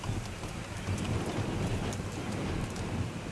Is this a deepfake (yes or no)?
no